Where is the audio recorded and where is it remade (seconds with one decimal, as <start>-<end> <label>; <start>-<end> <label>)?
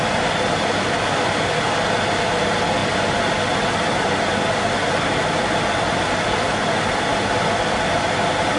0.0-8.6 recorded